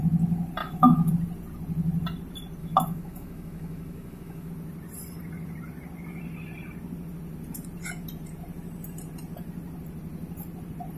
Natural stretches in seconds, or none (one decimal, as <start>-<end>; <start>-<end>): 0.0-0.6; 1.1-2.6; 4.5-11.0